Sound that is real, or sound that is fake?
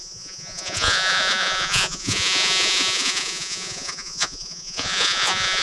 fake